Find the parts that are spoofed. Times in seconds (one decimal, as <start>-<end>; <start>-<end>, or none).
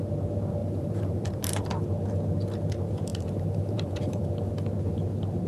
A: 0.6-1.7; 3.1-4.3